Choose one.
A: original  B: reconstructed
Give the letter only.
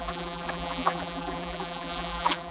B